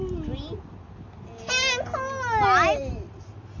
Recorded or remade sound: recorded